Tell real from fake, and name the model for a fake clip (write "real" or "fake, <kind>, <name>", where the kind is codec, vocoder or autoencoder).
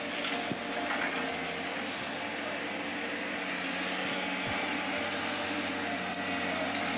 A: real